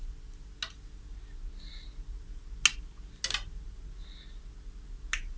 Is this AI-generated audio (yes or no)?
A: no